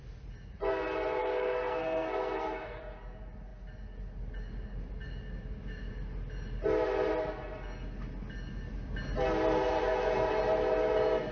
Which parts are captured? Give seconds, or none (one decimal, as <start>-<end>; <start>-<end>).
0.0-1.2; 2.8-11.3